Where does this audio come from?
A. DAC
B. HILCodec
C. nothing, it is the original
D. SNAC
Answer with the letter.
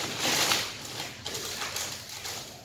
C